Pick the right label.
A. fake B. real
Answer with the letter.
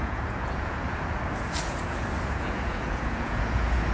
A